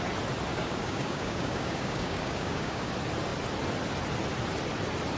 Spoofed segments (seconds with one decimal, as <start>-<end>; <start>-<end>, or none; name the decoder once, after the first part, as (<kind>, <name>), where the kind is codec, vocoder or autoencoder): 0.5-2.9 (codec, DAC)